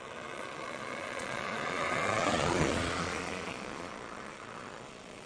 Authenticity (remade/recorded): remade